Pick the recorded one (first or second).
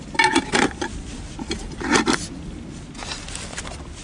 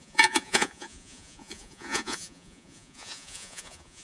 first